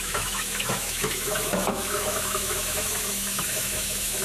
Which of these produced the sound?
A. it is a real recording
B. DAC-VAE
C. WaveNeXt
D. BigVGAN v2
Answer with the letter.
B